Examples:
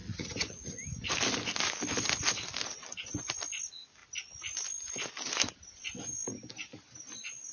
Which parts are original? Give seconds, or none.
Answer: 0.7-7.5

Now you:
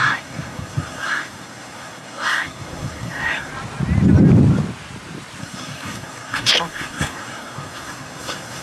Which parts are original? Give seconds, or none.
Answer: 3.5-5.4

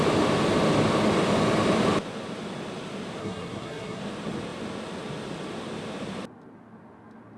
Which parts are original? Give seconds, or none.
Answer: 0.0-3.2; 4.0-7.4

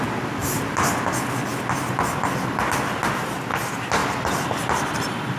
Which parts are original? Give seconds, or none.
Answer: 0.0-5.4

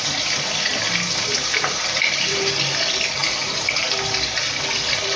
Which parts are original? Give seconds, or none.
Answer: 0.0-5.2

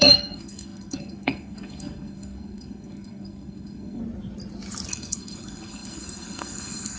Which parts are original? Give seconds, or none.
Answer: 4.0-4.9

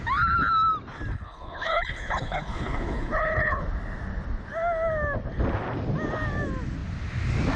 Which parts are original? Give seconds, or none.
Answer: 0.0-1.1; 3.6-7.6